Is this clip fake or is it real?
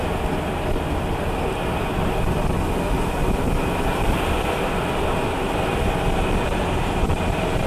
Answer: real